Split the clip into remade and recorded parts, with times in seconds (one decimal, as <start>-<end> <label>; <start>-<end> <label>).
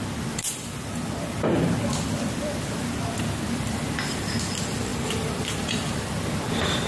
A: 0.0-6.9 recorded